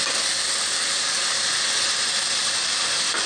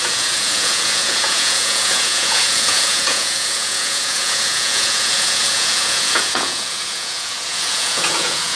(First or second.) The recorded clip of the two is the first